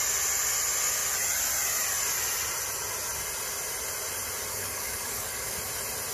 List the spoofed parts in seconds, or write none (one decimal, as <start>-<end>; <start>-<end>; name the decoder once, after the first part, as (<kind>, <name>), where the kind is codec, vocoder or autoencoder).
4.5-5.6 (codec, DAC)